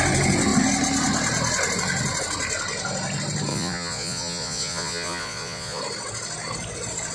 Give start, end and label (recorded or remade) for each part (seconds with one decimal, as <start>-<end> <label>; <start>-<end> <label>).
0.0-3.5 recorded; 3.5-5.8 remade; 5.8-7.1 recorded